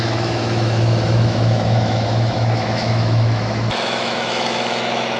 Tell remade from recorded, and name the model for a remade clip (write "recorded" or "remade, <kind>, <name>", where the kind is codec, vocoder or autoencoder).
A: remade, autoencoder, DAC-VAE